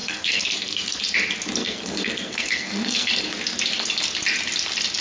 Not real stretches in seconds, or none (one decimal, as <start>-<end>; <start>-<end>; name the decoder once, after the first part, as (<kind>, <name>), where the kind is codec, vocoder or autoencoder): 0.0-1.0 (codec, SNAC); 1.6-3.1

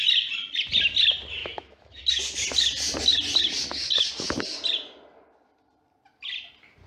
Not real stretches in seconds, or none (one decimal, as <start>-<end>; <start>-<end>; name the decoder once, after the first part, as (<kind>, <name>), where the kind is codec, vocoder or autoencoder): 1.4-2.0 (autoencoder, DAC-VAE)

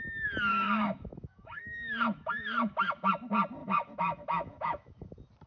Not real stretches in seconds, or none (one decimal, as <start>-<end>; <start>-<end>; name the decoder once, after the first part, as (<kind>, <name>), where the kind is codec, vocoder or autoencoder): 0.5-3.1 (autoencoder, DAC-VAE); 3.6-5.1

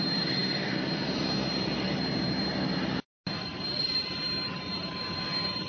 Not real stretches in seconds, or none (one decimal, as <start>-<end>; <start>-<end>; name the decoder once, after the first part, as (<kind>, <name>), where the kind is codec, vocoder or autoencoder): none

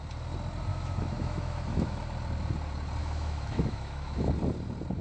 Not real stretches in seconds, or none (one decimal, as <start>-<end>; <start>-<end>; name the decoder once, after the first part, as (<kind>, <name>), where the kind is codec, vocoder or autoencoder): 0.7-2.0 (autoencoder, DAC-VAE); 3.0-4.3

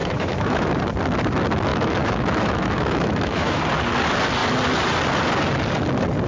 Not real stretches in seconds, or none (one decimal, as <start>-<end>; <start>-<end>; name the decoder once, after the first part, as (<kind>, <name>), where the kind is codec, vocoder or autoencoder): 0.0-0.8 (autoencoder, DAC-VAE); 1.7-3.6

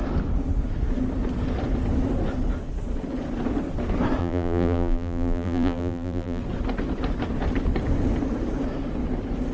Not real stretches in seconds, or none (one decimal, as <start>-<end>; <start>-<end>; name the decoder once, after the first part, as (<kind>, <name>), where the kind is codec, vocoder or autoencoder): 4.2-6.4 (vocoder, BigVGAN v2)

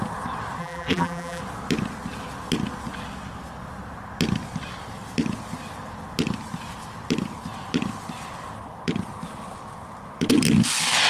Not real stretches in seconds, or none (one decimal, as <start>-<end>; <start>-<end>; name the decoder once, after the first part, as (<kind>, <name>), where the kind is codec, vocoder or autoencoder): 0.6-1.4 (vocoder, BigVGAN v2)